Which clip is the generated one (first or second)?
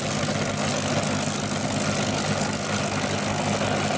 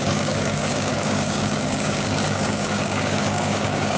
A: second